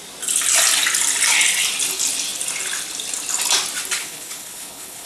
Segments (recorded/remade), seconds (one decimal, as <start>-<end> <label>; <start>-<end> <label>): 0.0-4.0 recorded; 4.0-5.1 remade